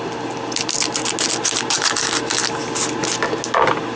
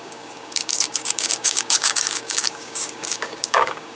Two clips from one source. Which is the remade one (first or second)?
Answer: second